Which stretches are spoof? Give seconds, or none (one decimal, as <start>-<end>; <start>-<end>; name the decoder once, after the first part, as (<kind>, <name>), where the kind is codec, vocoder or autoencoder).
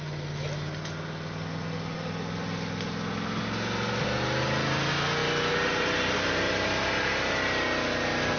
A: none